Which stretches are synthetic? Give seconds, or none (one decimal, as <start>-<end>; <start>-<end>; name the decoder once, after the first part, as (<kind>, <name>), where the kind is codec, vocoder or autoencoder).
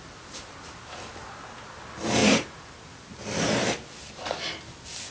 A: none